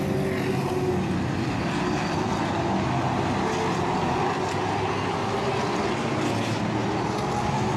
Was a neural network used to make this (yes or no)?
no